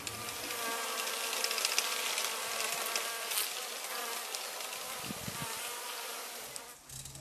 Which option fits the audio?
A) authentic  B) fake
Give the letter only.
A